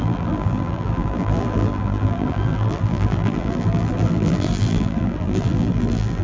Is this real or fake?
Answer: fake